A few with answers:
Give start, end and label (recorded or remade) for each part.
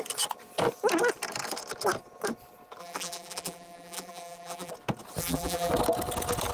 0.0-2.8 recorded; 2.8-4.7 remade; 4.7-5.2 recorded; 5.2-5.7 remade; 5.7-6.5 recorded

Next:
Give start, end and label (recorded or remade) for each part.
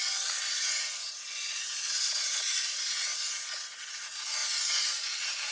0.0-0.5 recorded; 0.5-3.1 remade; 3.1-3.9 recorded; 3.9-4.4 remade; 4.4-4.9 recorded; 4.9-5.5 remade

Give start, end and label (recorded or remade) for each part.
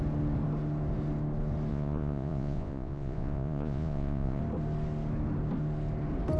0.0-1.7 recorded; 1.7-4.4 remade; 4.4-6.4 recorded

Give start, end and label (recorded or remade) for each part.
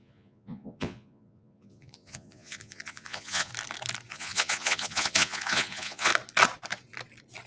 0.0-3.5 remade; 3.5-4.1 recorded; 4.1-6.1 remade; 6.1-7.5 recorded